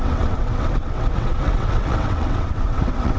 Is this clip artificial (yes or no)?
yes